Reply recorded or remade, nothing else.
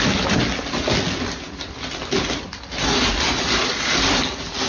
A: recorded